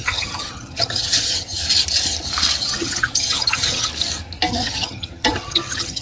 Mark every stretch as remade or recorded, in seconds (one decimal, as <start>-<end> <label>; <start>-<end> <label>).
0.0-1.6 remade; 1.6-2.6 recorded; 2.6-3.9 remade; 3.9-4.5 recorded; 4.5-6.0 remade